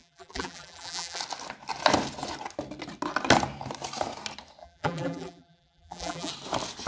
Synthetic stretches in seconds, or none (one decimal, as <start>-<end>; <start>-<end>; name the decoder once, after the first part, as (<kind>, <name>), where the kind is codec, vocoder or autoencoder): 0.0-1.2 (vocoder, BigVGAN v2); 4.6-6.3